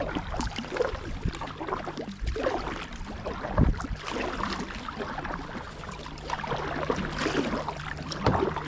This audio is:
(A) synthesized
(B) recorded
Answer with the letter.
B